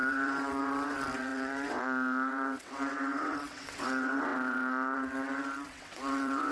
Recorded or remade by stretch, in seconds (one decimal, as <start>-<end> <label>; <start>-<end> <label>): 0.0-6.5 remade